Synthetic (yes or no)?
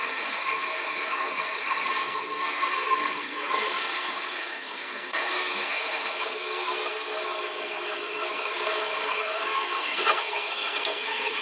yes